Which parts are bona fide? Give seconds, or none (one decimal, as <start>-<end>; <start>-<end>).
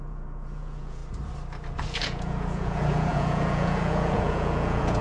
1.0-1.9